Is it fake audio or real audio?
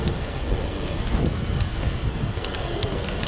fake